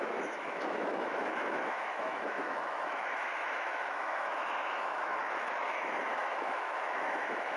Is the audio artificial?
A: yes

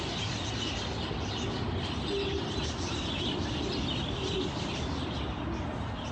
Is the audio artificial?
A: no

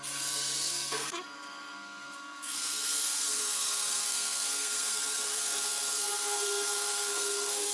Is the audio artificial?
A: yes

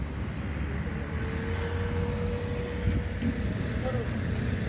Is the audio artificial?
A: no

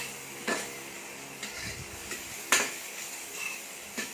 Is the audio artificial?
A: yes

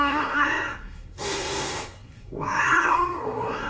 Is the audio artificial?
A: yes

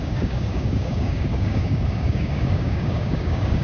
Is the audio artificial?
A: yes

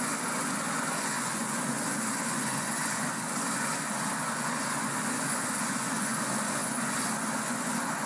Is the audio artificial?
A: yes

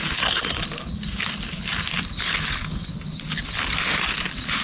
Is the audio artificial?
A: no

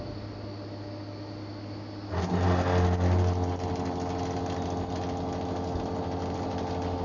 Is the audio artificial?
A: no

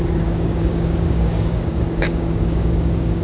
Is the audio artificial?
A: yes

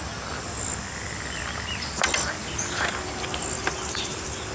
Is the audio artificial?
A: no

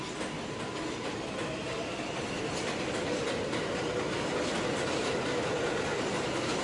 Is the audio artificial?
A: no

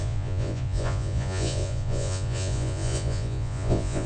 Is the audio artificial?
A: yes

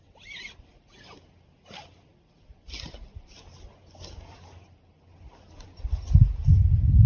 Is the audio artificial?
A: no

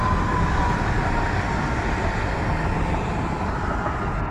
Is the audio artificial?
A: no